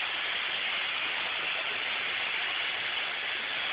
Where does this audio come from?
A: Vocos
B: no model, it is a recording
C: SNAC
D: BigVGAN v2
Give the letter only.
B